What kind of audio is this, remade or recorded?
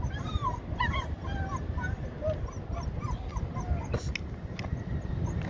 recorded